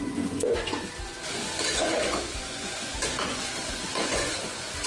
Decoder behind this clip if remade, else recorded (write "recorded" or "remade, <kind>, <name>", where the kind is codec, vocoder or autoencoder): remade, vocoder, Vocos